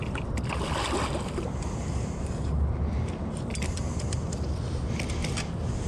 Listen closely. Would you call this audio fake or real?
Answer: real